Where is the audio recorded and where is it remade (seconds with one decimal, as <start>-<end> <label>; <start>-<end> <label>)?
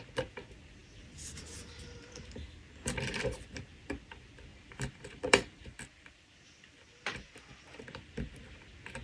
0.0-4.5 recorded; 4.5-5.8 remade; 5.8-9.0 recorded